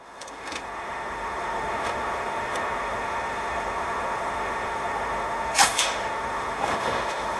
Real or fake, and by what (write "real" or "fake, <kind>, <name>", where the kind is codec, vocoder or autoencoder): fake, autoencoder, DAC-VAE